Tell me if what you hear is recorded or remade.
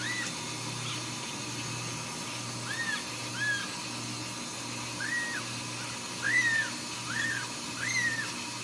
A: recorded